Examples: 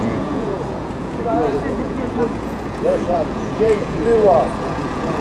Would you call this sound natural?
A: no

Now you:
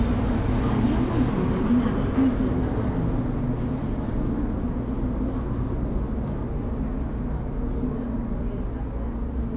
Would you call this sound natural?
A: yes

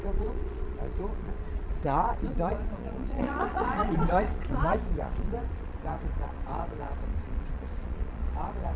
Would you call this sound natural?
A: no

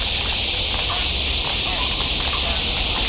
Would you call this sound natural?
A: yes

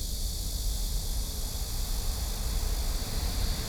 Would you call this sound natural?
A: yes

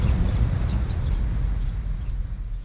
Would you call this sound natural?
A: no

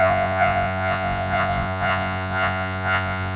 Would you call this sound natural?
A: no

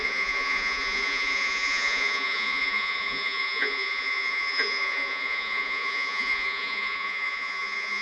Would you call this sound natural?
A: no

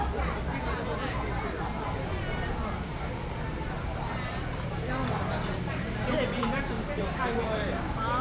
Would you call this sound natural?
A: yes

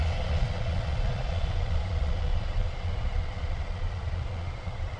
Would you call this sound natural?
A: no